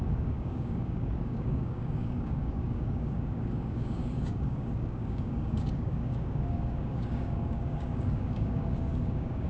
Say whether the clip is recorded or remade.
remade